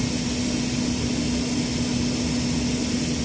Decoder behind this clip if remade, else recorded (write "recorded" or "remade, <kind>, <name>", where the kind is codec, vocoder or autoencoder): recorded